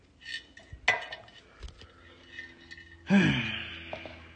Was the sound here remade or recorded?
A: recorded